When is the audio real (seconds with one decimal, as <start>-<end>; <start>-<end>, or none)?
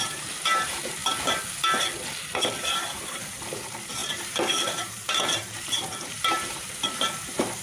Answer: 1.0-2.6